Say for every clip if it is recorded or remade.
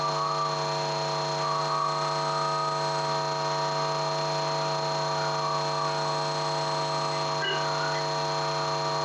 recorded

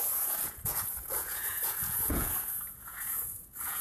remade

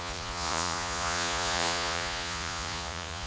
remade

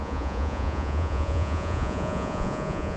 remade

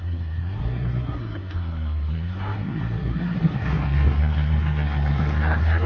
remade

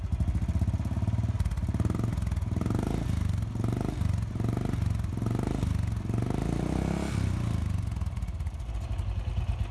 recorded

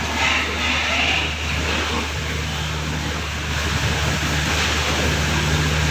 recorded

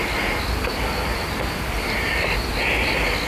recorded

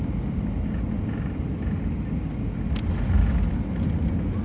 recorded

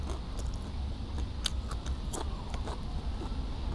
recorded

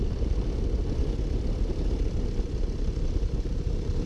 recorded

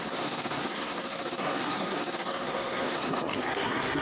remade